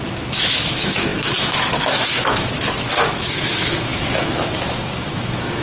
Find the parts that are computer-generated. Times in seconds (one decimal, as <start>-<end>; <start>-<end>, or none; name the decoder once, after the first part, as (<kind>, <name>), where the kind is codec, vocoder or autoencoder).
0.0-5.6 (autoencoder, DAC-VAE)